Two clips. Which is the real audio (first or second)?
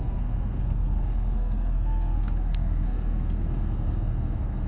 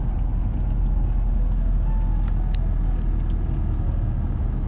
second